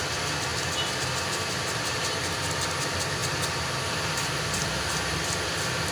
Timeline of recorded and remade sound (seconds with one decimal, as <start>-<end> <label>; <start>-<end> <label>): 0.0-5.9 recorded